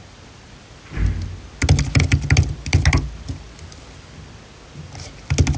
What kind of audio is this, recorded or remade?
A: recorded